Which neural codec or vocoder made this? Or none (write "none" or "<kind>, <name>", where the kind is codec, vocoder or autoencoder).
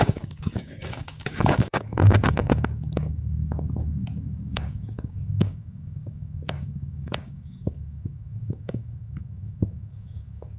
codec, DAC